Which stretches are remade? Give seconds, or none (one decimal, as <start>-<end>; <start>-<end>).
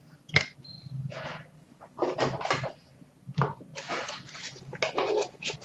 0.0-0.7; 1.9-3.7